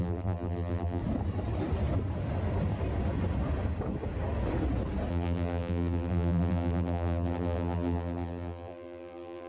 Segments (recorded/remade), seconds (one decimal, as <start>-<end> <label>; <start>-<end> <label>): 0.0-1.0 remade; 1.0-5.1 recorded; 5.1-9.5 remade